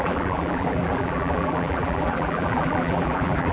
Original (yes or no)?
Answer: no